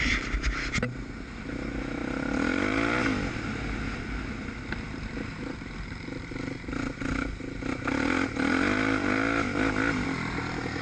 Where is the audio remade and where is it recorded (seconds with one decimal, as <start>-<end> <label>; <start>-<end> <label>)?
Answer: 0.0-10.8 recorded

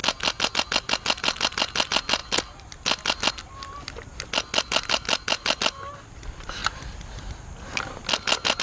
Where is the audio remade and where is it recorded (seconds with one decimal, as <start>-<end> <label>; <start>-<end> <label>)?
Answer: 0.0-8.6 recorded

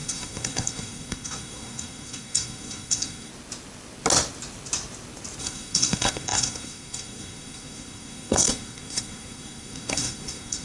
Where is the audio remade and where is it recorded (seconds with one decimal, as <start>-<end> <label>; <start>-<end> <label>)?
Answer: 0.0-3.3 remade; 3.3-5.4 recorded; 5.4-10.6 remade

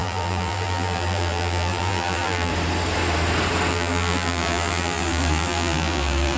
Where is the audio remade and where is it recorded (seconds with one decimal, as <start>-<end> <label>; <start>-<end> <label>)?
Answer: 0.0-2.5 remade; 2.5-3.7 recorded; 3.7-6.4 remade

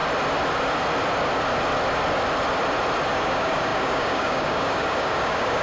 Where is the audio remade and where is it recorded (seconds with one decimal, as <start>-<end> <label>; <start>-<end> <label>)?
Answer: 0.0-3.1 recorded; 3.1-5.6 remade